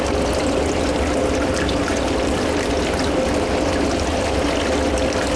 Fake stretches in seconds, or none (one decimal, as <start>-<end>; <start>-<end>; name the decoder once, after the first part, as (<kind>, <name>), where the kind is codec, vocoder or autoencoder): none